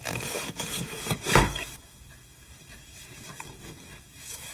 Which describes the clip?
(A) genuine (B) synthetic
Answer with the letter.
B